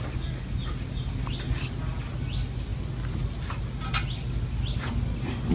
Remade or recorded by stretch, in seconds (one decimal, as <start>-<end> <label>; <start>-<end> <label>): 0.0-5.5 recorded

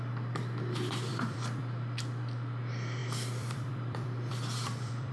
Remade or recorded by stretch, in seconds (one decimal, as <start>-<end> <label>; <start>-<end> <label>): 0.0-1.1 recorded; 1.1-1.6 remade; 1.6-3.0 recorded; 3.0-5.1 remade

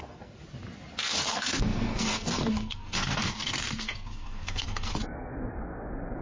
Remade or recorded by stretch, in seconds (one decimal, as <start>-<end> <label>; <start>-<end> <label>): 0.0-0.4 remade; 0.4-1.0 recorded; 1.0-4.9 remade; 4.9-6.2 recorded

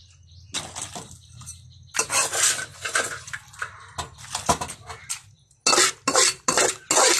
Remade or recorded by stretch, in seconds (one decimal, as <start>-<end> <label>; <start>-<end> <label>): 0.0-2.7 recorded; 2.7-3.3 remade; 3.3-7.2 recorded

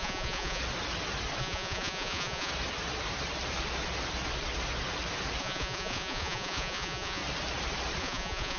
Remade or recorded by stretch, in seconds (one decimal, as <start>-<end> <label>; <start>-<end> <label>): 0.0-0.6 remade; 0.6-1.4 recorded; 1.4-2.5 remade; 2.5-5.4 recorded; 5.4-7.2 remade; 7.2-8.0 recorded; 8.0-8.6 remade